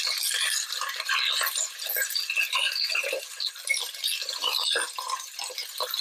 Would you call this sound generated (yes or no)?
no